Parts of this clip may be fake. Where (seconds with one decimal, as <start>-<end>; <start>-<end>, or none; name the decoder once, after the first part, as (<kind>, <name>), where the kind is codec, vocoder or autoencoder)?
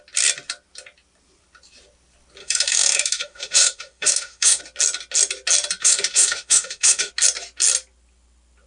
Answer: 2.4-4.6 (autoencoder, DAC-VAE); 5.8-7.1